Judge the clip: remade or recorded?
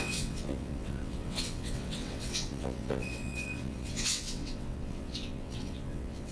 remade